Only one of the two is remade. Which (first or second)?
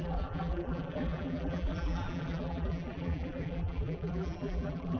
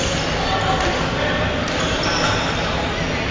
first